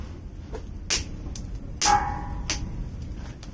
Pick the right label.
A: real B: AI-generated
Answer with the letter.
A